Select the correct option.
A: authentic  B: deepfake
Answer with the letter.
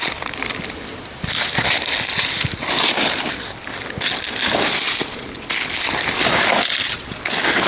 A